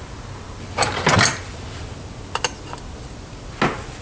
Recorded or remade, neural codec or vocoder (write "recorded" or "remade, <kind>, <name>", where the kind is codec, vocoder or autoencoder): recorded